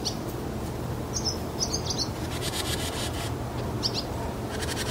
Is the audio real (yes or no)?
yes